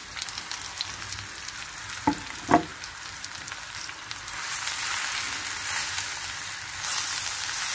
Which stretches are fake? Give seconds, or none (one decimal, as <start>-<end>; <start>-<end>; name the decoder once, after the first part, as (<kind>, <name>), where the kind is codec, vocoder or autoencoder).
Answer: 2.7-4.5 (vocoder, BigVGAN v2)

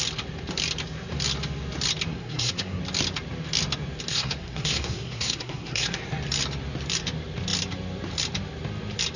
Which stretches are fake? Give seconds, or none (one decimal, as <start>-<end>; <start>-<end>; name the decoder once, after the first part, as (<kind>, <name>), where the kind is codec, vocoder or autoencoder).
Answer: 2.1-2.8 (codec, SNAC); 4.1-6.0

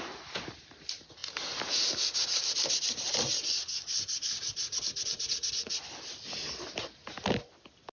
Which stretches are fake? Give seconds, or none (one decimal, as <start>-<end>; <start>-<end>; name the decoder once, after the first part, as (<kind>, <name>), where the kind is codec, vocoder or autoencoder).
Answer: 5.1-5.8 (vocoder, Vocos)

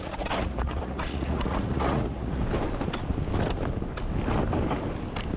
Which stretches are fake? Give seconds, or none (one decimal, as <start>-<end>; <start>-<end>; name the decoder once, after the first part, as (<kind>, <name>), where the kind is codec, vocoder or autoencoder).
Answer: 0.0-2.4 (vocoder, Vocos)

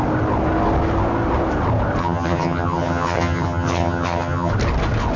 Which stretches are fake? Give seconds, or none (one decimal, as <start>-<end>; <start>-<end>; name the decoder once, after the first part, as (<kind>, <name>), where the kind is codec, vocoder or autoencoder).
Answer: 2.0-4.5 (vocoder, HiFi-GAN)

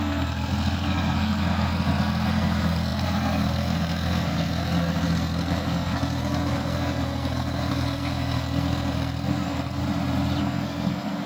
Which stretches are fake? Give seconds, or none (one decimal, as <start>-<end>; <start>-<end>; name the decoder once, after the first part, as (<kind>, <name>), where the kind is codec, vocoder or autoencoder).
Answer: 0.0-9.8 (codec, SNAC); 10.4-11.3

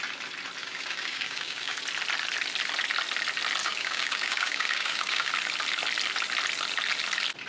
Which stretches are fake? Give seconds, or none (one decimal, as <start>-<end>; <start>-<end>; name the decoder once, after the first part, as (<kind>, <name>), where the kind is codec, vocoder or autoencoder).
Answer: 0.6-1.8 (codec, DAC); 3.6-5.3